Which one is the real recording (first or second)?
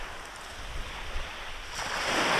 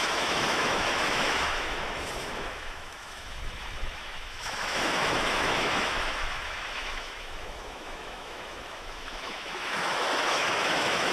first